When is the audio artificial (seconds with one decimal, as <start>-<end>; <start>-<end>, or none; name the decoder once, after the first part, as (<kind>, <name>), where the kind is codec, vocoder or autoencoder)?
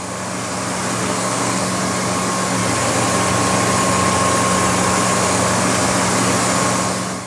1.0-1.6 (codec, SNAC)